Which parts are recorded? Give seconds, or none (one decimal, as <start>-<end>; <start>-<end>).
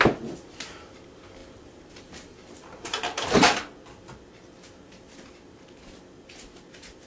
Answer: 0.0-1.4; 3.6-7.1